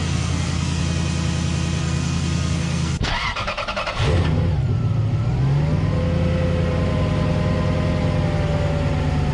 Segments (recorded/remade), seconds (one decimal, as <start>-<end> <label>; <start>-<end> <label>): 0.0-0.8 remade; 0.8-1.8 recorded; 1.8-3.1 remade; 3.1-9.3 recorded